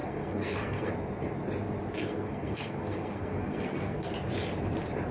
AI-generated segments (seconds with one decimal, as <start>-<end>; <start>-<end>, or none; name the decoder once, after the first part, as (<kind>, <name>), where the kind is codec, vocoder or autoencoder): 0.0-0.9 (codec, SNAC); 2.0-4.1